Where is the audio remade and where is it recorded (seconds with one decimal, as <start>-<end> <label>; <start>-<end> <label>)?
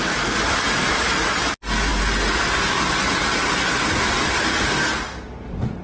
0.0-5.8 recorded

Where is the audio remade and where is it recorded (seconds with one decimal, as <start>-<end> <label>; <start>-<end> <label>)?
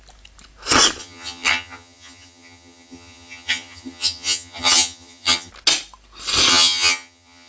0.0-1.0 recorded; 1.0-5.5 remade; 5.5-6.5 recorded; 6.5-7.5 remade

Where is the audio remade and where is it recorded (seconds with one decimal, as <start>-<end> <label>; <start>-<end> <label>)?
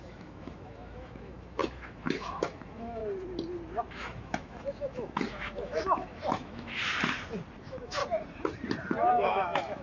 0.0-3.0 remade; 3.0-3.9 recorded; 3.9-6.8 remade; 6.8-7.6 recorded; 7.6-8.0 remade; 8.0-9.1 recorded; 9.1-9.8 remade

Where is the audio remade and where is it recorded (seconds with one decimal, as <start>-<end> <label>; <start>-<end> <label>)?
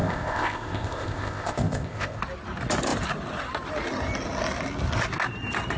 0.0-2.2 remade; 2.2-5.8 recorded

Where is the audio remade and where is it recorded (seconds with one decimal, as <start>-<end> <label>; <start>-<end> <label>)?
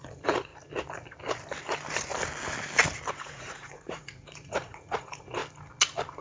0.0-0.5 remade; 0.5-3.1 recorded; 3.1-5.4 remade; 5.4-6.2 recorded